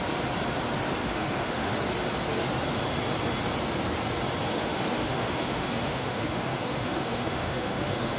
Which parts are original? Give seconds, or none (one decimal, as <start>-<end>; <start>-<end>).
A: 0.0-1.0; 1.7-4.5